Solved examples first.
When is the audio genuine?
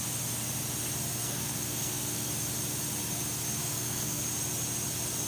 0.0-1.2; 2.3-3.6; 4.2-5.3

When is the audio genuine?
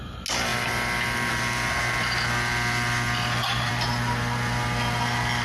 0.0-5.4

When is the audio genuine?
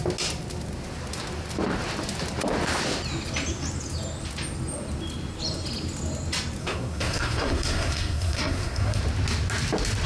0.0-6.6; 9.0-10.1